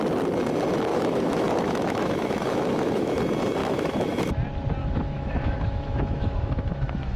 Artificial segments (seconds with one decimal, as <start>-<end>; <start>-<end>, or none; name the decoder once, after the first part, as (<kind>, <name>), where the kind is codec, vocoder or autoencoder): 0.9-3.2 (autoencoder, DAC-VAE); 3.6-4.3; 4.8-7.2